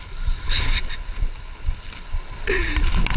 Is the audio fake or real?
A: real